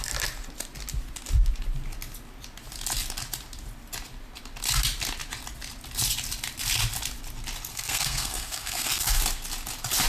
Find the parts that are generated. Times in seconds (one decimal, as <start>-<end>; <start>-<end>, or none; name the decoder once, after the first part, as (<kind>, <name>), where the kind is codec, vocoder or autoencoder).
7.7-9.2 (codec, SNAC)